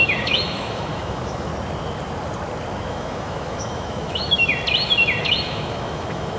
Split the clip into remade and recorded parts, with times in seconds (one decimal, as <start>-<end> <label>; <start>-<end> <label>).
0.0-1.5 remade; 1.5-2.9 recorded; 2.9-4.5 remade; 4.5-5.2 recorded; 5.2-6.4 remade